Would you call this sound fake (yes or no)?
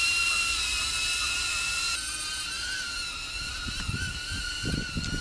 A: no